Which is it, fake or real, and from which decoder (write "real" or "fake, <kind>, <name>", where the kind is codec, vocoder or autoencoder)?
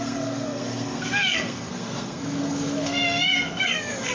fake, codec, SNAC